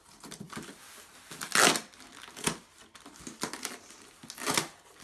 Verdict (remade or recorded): recorded